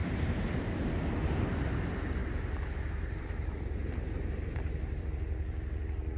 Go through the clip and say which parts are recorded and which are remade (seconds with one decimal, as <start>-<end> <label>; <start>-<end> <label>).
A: 0.0-0.9 remade; 0.9-2.2 recorded; 2.2-5.0 remade; 5.0-6.2 recorded